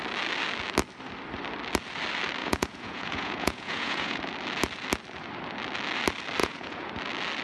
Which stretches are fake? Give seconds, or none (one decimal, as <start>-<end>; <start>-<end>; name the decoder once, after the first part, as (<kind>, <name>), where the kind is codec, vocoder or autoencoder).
2.4-4.2 (vocoder, Vocos); 6.4-6.9